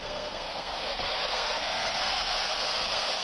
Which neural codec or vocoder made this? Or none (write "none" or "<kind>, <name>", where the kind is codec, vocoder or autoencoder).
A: codec, SNAC